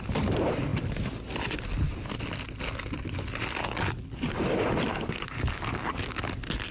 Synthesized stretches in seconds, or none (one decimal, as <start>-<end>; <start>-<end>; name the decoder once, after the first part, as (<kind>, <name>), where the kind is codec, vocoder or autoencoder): 4.9-6.2 (codec, DAC)